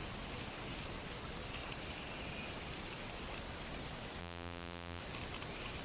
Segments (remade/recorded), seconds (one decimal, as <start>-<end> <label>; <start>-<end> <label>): 0.0-4.2 recorded; 4.2-5.0 remade; 5.0-5.8 recorded